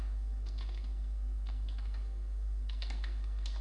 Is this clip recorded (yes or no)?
no